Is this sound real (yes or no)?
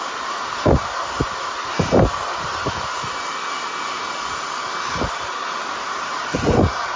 yes